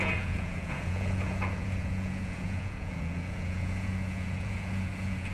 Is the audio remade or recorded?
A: remade